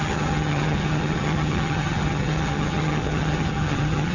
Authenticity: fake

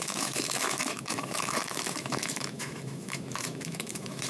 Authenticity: fake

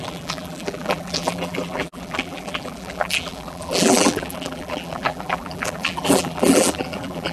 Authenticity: fake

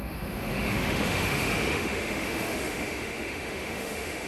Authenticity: fake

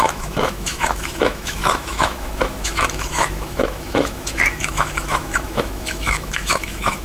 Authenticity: fake